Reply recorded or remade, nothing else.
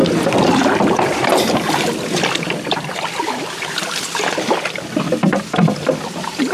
recorded